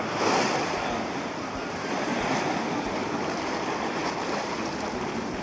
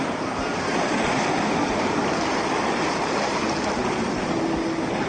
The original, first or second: second